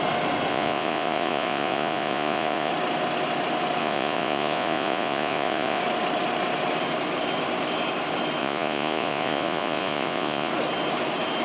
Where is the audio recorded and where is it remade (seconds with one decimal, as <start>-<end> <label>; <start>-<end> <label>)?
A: 0.0-0.5 recorded; 0.5-2.7 remade; 2.7-3.8 recorded; 3.8-5.8 remade; 5.8-8.4 recorded; 8.4-10.5 remade; 10.5-11.4 recorded